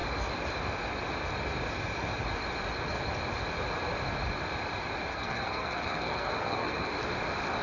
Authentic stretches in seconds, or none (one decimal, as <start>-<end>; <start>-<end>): 0.0-5.1; 6.9-7.6

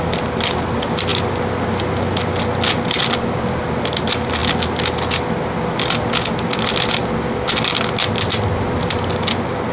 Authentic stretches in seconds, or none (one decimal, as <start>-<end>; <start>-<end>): 0.0-9.7

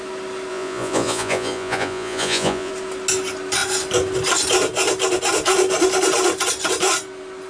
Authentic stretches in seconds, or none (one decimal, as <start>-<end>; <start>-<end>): 0.0-0.5; 2.7-7.5

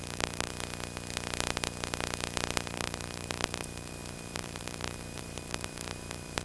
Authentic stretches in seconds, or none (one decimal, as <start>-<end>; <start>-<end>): 0.5-2.7

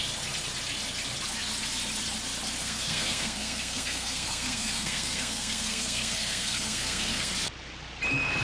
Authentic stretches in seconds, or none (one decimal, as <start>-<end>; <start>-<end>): 0.0-2.6; 7.3-8.4

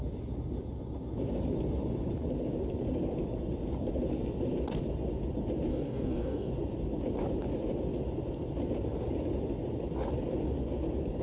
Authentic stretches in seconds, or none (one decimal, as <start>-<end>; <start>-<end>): 0.0-5.7; 6.5-11.2

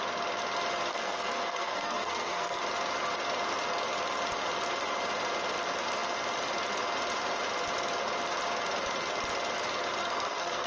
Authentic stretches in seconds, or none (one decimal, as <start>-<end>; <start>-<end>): 0.0-0.9; 2.6-10.0